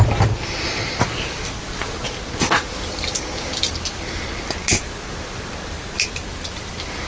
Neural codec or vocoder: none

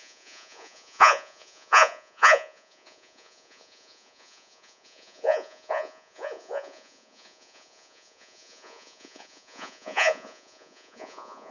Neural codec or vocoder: vocoder, Vocos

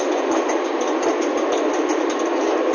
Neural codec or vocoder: none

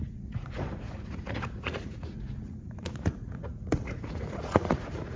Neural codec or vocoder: vocoder, Vocos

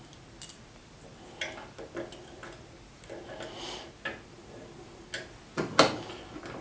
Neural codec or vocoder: none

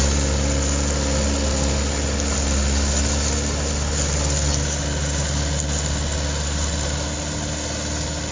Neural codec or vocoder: none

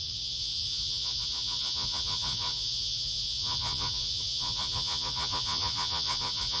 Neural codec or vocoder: vocoder, Vocos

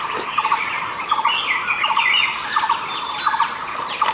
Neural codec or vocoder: none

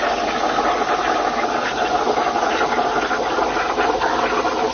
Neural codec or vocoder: none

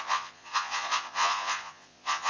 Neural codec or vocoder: vocoder, Vocos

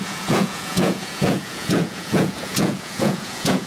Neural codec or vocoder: vocoder, Vocos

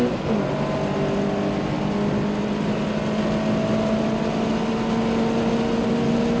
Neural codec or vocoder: none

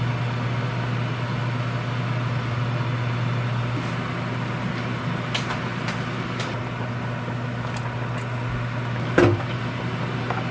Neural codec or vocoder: none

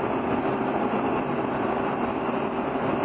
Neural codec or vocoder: none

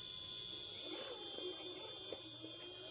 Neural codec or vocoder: none